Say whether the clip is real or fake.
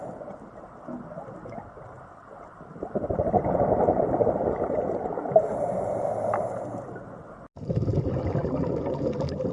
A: real